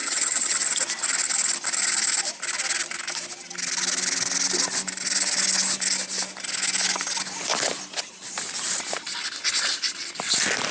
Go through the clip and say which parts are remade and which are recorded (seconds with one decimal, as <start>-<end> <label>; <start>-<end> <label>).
0.0-0.7 remade; 0.7-10.7 recorded